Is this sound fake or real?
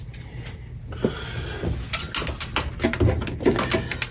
real